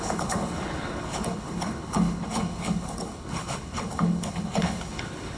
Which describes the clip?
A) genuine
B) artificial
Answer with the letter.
B